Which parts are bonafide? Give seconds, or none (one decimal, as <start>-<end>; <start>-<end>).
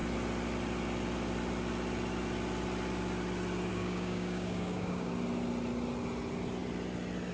0.0-3.7; 5.1-7.3